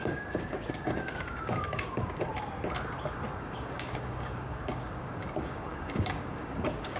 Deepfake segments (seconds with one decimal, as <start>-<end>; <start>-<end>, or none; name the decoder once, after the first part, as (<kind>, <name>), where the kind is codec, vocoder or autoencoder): 0.0-2.3 (codec, DAC); 3.4-7.0